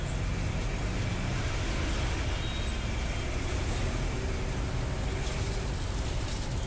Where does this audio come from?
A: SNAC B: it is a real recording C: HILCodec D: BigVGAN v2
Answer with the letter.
B